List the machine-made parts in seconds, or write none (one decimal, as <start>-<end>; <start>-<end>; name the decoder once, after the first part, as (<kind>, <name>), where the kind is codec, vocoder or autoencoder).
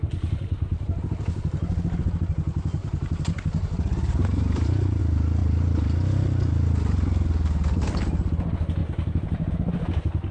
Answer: 2.8-5.0 (vocoder, BigVGAN v2); 8.8-9.5